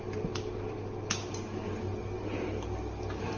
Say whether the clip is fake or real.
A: real